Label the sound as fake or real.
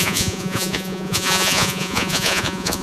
fake